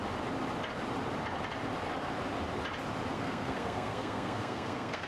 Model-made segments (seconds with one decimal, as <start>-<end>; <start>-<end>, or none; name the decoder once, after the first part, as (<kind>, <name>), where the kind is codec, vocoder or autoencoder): 3.1-5.1 (codec, SNAC)